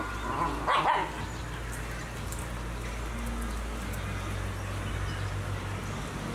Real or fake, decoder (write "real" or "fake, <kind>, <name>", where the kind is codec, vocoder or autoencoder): real